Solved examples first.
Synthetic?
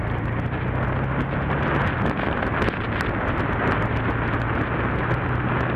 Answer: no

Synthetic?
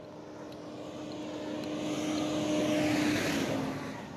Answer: no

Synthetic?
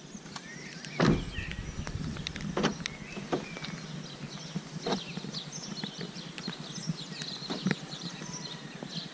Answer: no